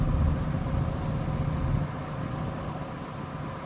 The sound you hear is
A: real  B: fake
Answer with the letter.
A